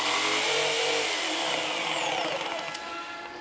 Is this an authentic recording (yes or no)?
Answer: yes